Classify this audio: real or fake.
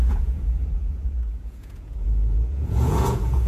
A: fake